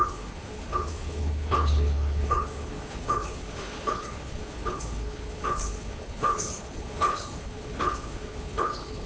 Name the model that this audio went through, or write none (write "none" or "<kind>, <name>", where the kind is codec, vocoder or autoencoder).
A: codec, HILCodec